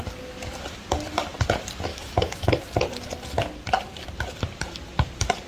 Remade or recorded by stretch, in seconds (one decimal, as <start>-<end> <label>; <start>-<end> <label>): 0.0-1.9 recorded; 1.9-2.6 remade; 2.6-5.5 recorded